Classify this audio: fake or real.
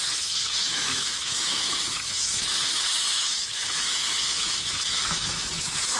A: fake